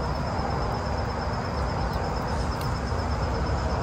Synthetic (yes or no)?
no